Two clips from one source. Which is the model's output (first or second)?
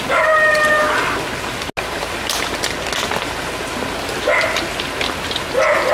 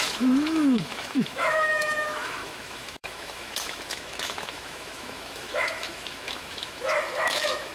second